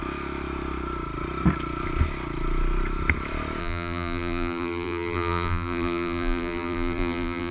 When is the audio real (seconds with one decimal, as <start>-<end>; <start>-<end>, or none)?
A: 0.0-3.6